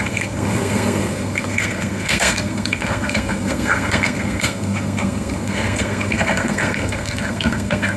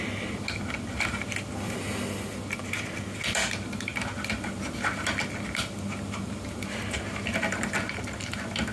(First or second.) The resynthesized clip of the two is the first